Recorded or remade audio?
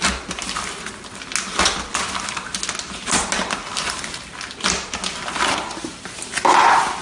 recorded